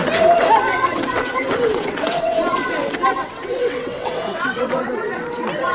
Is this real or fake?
fake